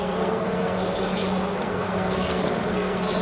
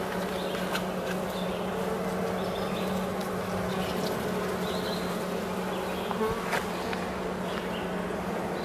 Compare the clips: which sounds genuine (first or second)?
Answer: second